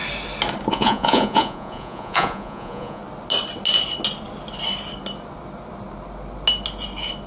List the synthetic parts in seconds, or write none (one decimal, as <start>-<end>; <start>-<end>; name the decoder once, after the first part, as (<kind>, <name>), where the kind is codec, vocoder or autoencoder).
0.7-3.0 (vocoder, Vocos)

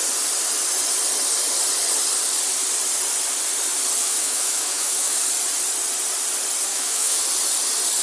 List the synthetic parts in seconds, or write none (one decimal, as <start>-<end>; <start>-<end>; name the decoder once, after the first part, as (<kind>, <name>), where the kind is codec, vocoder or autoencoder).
4.0-5.2 (autoencoder, DAC-VAE); 6.7-7.2